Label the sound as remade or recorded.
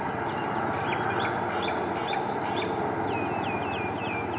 recorded